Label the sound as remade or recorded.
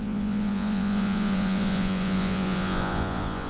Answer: remade